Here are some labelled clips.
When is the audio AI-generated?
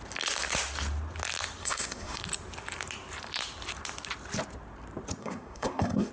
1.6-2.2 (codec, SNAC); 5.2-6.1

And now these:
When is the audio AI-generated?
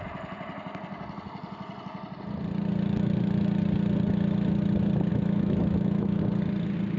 5.1-6.2 (autoencoder, DAC-VAE)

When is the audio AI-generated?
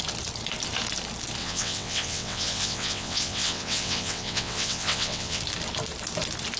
1.4-5.4 (vocoder, WaveNeXt)